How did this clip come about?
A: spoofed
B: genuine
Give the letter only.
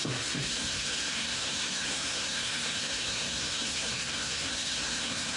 A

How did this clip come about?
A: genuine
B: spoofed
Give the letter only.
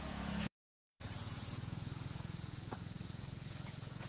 B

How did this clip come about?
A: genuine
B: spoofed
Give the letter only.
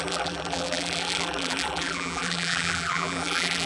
B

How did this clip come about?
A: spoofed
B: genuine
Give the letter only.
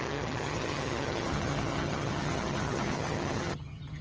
A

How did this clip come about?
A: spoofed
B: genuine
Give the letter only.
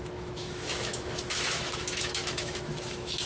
A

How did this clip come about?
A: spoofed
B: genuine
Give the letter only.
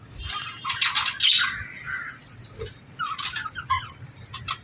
B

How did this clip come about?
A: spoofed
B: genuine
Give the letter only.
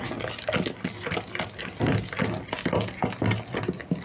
B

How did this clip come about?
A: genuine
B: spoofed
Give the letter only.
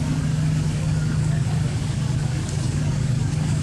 B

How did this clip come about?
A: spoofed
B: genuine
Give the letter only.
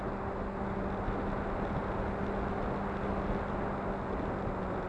B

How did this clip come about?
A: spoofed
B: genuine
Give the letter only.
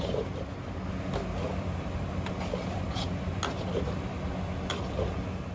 B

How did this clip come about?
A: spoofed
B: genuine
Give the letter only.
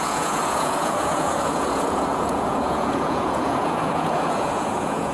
A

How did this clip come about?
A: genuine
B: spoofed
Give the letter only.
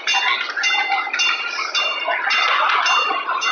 A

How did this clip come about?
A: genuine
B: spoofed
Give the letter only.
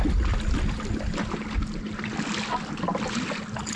A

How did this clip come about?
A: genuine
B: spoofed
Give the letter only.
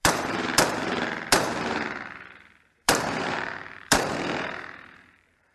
B